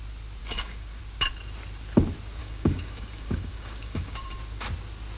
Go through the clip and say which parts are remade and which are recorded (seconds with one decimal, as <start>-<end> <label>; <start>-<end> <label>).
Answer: 0.0-0.4 recorded; 0.4-1.0 remade; 1.0-2.4 recorded; 2.4-4.3 remade; 4.3-5.2 recorded

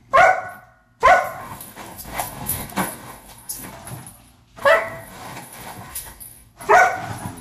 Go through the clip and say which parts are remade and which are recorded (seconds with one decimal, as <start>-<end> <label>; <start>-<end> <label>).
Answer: 0.0-1.4 recorded; 1.4-3.7 remade; 3.7-4.6 recorded; 4.6-6.5 remade; 6.5-7.4 recorded

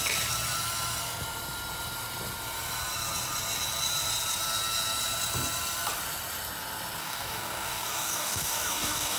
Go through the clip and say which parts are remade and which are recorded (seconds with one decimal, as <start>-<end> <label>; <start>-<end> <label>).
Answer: 0.0-7.0 recorded; 7.0-9.2 remade

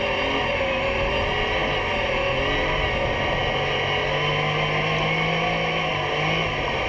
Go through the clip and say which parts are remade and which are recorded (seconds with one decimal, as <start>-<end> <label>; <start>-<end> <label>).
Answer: 0.0-6.9 recorded